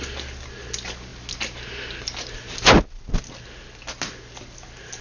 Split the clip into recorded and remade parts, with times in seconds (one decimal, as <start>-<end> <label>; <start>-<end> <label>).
0.0-5.0 recorded

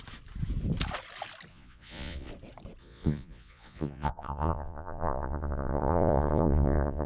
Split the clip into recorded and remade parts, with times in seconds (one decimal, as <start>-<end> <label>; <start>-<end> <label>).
0.0-1.5 recorded; 1.5-2.3 remade; 2.3-2.8 recorded; 2.8-7.1 remade